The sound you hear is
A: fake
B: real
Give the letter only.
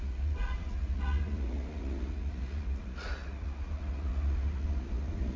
A